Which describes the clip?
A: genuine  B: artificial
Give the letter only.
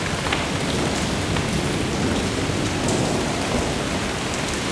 A